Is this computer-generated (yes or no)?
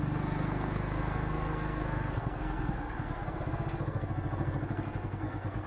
yes